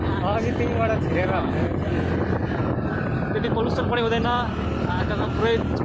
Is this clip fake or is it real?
real